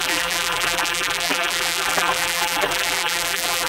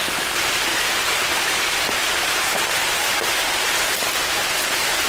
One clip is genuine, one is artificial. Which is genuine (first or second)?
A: second